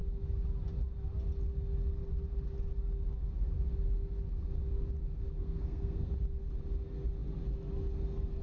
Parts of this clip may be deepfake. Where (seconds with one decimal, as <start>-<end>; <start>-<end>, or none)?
5.4-6.1